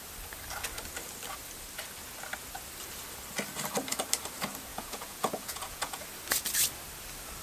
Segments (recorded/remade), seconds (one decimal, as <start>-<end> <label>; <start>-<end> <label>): 0.0-4.7 recorded; 4.7-6.0 remade; 6.0-7.4 recorded